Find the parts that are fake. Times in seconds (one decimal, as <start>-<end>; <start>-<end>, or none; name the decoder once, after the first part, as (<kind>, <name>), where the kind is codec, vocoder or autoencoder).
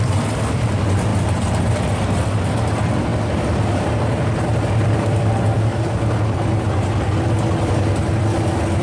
0.0-8.8 (vocoder, BigVGAN v2)